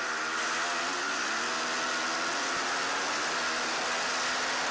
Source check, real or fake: real